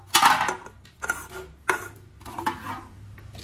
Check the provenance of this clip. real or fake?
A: real